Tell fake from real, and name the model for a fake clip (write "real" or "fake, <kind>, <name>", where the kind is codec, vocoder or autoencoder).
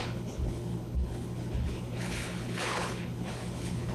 fake, codec, HILCodec